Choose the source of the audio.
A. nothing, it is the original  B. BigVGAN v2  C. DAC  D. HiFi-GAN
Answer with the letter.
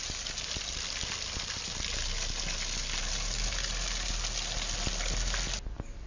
A